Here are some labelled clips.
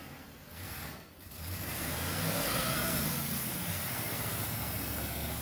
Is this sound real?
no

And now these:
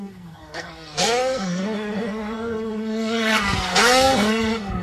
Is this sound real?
no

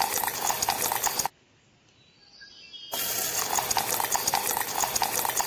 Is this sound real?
yes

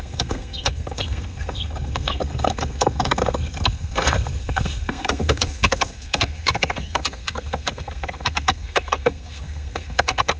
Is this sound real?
no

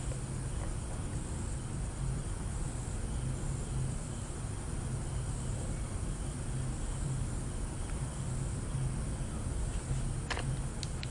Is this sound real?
yes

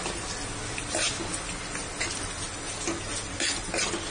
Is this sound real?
yes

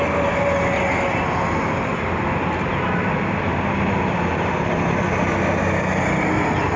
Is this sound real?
yes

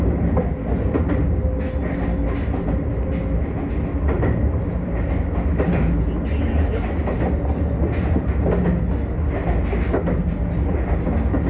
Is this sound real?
yes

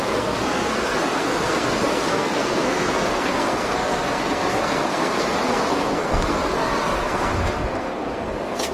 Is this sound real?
no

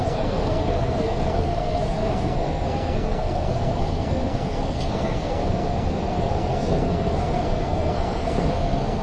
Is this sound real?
no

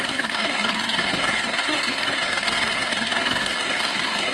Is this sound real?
no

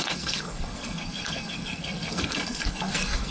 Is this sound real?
no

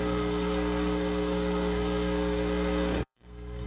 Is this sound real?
no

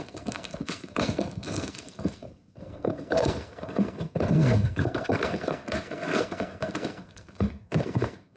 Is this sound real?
no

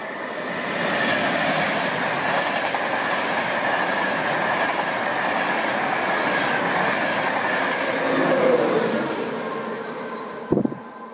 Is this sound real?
yes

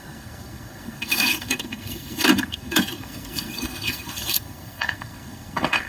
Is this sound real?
no